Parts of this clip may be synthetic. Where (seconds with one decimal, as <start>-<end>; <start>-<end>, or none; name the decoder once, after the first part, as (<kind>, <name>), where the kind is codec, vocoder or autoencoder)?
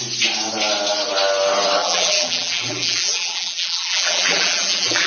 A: 1.8-5.1 (vocoder, BigVGAN v2)